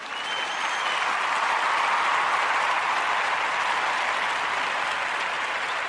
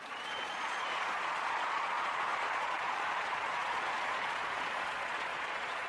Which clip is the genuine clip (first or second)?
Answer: first